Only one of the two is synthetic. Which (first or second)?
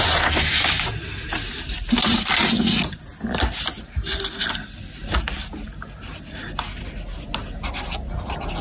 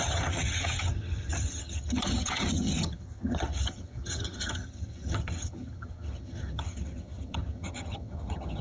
second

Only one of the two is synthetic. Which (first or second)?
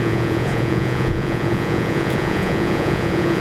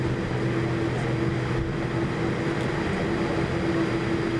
first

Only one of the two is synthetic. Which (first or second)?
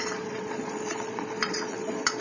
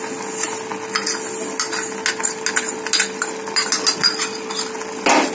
first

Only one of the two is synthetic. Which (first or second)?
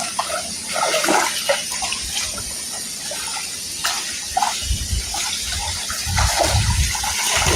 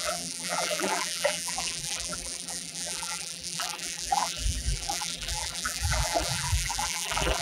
second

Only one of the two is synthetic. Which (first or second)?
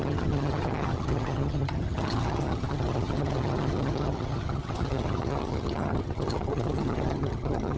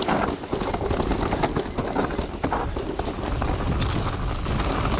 first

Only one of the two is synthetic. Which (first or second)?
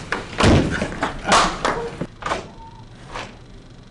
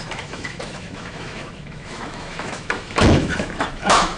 second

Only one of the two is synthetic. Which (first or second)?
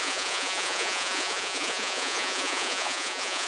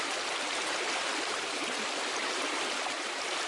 first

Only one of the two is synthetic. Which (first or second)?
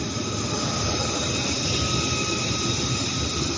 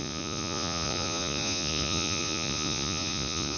second